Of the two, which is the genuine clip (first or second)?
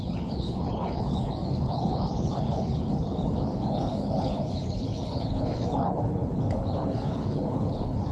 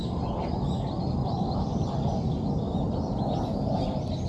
second